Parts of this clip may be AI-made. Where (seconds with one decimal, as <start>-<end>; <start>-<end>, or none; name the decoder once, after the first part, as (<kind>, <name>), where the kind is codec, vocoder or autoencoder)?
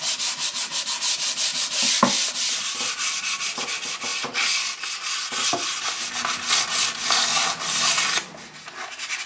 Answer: 1.5-3.1 (vocoder, BigVGAN v2); 7.3-8.1